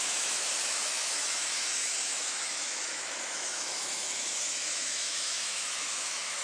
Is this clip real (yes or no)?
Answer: no